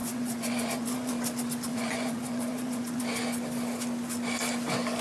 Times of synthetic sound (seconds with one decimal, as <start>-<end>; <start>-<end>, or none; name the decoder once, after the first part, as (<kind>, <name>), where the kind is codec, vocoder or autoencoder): 0.0-1.1 (vocoder, Vocos); 1.7-3.0

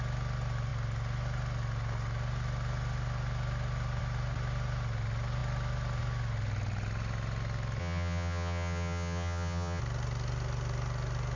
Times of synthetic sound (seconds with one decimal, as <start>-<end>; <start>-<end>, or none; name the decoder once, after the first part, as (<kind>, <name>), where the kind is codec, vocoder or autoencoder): 7.8-9.8 (vocoder, HiFi-GAN)

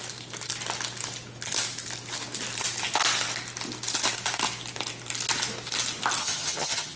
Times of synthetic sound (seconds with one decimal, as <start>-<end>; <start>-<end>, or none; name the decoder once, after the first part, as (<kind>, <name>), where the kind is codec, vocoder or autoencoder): 6.2-7.0 (vocoder, HiFi-GAN)

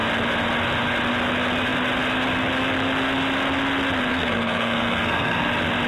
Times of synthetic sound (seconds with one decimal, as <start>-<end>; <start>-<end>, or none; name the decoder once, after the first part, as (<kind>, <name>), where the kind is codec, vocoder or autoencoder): 4.1-5.5 (codec, SNAC)

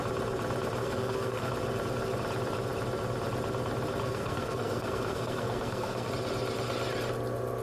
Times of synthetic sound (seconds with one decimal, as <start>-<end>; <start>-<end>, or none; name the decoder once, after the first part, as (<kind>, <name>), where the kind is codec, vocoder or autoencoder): 0.8-1.5 (codec, SNAC); 4.0-6.1

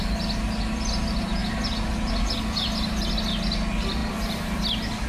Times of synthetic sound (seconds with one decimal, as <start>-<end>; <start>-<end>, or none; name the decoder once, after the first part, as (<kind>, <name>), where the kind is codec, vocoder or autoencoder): 4.0-5.1 (vocoder, BigVGAN v2)